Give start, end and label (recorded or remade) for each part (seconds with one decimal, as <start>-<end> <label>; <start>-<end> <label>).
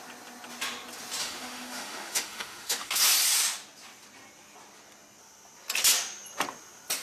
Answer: 0.0-1.2 recorded; 1.2-3.0 remade; 3.0-7.0 recorded